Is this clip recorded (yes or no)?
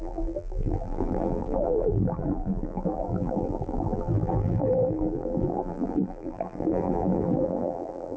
no